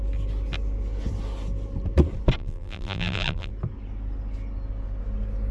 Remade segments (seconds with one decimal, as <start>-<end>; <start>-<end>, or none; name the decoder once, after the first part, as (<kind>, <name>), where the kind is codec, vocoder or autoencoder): 2.4-3.5 (vocoder, BigVGAN v2)